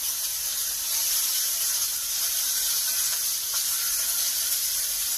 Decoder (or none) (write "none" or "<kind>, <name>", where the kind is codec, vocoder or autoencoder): none